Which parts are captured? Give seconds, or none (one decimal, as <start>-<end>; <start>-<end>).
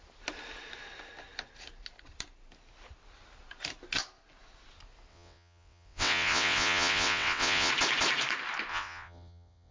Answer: 0.0-5.1; 7.7-8.7